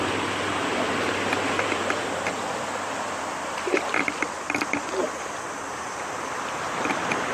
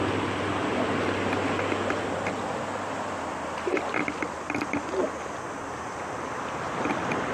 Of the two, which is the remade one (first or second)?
first